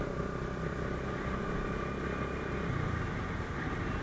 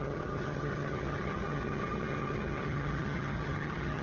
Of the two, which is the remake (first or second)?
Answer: second